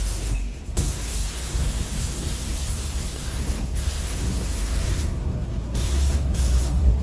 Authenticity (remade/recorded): remade